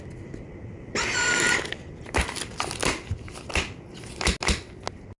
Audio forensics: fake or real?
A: real